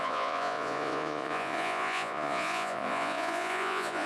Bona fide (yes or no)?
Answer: no